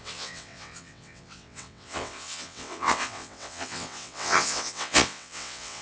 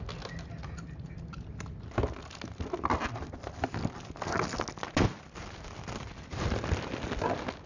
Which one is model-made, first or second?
first